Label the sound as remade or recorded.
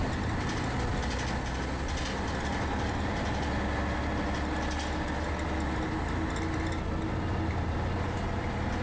recorded